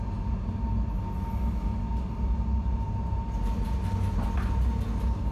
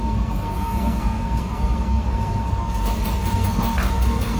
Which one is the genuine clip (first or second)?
first